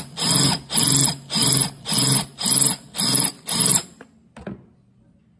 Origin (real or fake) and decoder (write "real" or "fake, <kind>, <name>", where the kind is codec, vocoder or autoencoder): real